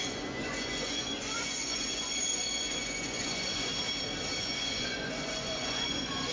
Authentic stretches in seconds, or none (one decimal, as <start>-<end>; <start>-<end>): 3.7-4.4